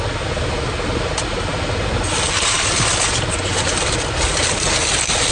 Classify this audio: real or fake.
real